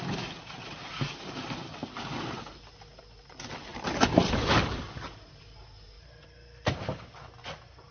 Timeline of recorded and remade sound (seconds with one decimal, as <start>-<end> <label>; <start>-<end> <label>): 0.0-3.7 recorded; 3.7-5.4 remade; 5.4-7.9 recorded